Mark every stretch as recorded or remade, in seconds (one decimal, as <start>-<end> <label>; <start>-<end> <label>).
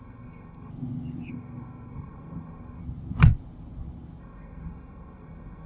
0.0-0.7 remade; 0.7-1.3 recorded; 1.3-2.8 remade; 2.8-4.2 recorded; 4.2-5.7 remade